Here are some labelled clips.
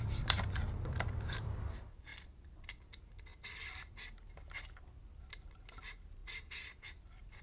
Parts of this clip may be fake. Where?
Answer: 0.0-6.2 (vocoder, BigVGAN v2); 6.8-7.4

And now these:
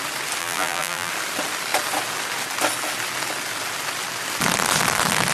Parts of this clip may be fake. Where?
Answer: 0.4-1.1 (vocoder, BigVGAN v2)

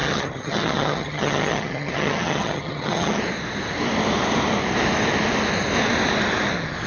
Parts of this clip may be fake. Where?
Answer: 0.0-3.2 (vocoder, HiFi-GAN)

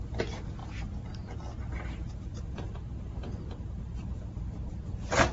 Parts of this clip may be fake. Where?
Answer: 0.6-1.1 (vocoder, BigVGAN v2); 1.6-4.8

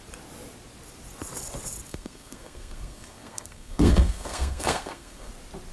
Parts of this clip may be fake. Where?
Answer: 1.9-5.3 (codec, SNAC)